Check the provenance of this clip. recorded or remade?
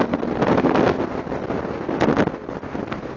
recorded